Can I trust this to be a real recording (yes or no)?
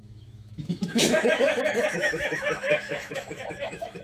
no